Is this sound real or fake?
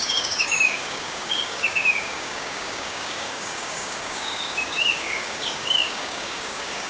fake